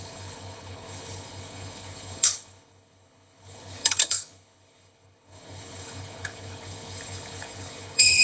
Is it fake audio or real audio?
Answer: fake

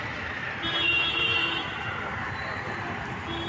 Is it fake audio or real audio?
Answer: real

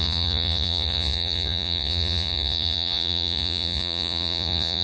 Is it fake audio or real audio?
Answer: fake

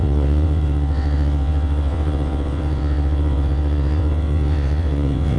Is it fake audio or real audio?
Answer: fake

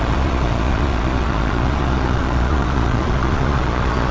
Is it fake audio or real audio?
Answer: fake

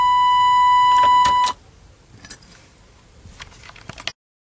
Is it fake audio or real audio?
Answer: real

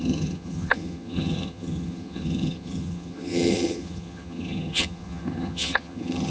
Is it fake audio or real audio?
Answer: fake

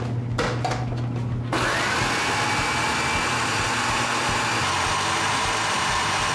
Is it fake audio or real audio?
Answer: real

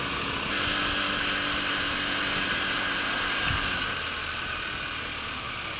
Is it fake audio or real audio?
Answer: real